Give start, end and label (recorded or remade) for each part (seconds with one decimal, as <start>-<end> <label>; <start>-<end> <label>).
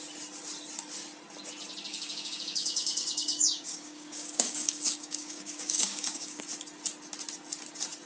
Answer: 0.0-1.9 recorded; 1.9-6.4 remade; 6.4-8.1 recorded